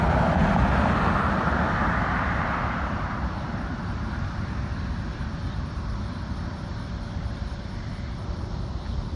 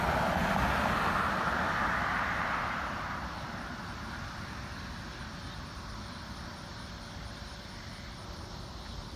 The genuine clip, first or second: second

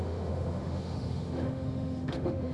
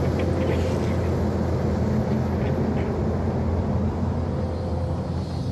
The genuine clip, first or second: second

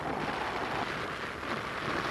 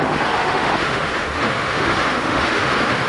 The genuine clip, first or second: first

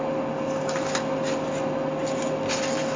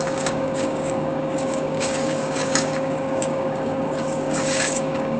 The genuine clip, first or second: first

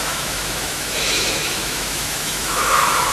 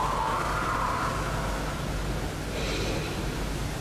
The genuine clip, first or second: second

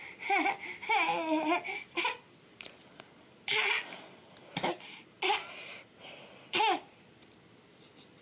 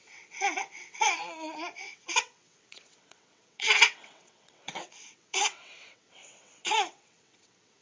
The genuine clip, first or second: first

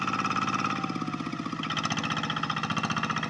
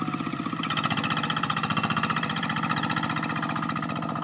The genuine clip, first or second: first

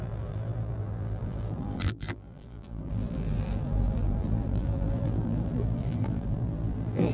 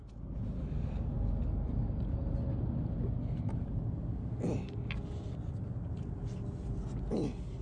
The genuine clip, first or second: second